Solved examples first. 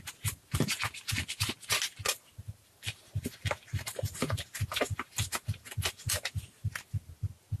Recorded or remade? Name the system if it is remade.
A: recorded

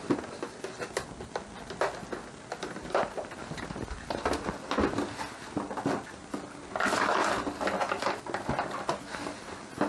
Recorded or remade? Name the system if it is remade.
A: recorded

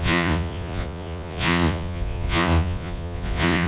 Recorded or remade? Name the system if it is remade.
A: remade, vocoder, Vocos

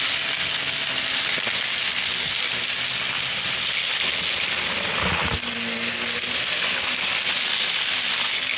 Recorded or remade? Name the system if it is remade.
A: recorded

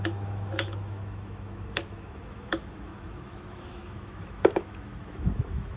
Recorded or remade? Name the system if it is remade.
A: remade, autoencoder, DAC-VAE